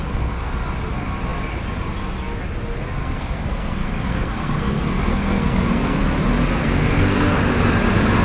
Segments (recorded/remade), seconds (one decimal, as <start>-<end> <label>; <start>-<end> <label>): 0.0-0.5 remade; 0.5-3.0 recorded; 3.0-6.0 remade; 6.0-6.6 recorded; 6.6-7.4 remade; 7.4-8.2 recorded